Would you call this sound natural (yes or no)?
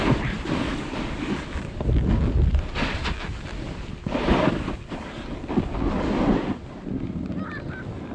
yes